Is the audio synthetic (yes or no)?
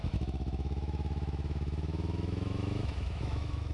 yes